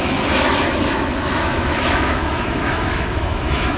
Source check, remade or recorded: remade